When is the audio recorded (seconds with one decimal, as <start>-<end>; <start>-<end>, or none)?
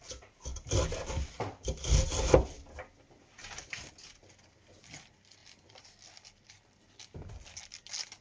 0.0-8.2